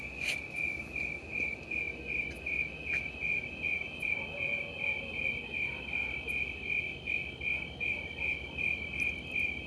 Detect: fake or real real